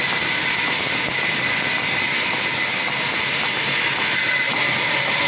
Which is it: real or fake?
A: real